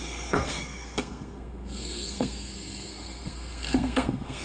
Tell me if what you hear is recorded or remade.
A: remade